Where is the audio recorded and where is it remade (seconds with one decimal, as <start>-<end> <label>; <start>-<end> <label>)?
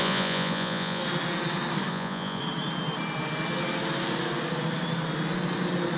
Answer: 0.0-1.0 remade; 1.0-1.9 recorded; 1.9-2.4 remade; 2.4-6.0 recorded